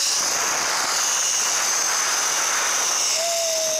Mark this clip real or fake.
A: real